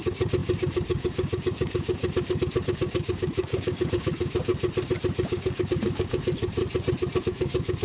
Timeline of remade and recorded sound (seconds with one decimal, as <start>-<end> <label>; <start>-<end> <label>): 0.0-4.5 remade; 4.5-5.2 recorded; 5.2-6.6 remade; 6.6-7.2 recorded; 7.2-7.8 remade